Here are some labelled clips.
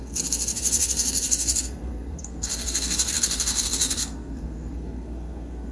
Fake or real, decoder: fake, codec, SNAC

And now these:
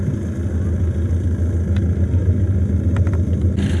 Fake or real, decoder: real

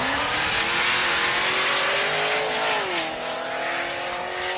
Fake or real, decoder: real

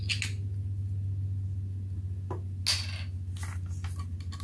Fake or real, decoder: real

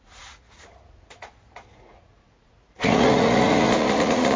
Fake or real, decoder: fake, vocoder, Vocos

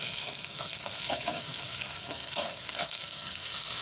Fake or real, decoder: fake, codec, SNAC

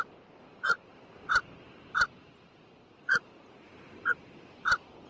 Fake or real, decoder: fake, vocoder, BigVGAN v2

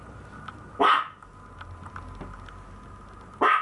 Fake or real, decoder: real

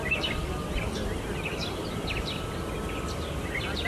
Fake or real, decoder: real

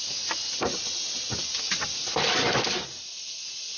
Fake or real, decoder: real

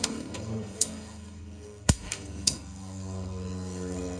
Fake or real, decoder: fake, codec, SNAC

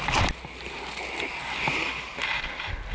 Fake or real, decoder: real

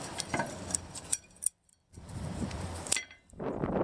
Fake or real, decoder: fake, vocoder, BigVGAN v2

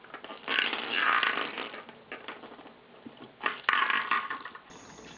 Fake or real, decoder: real